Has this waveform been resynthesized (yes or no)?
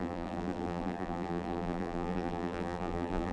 yes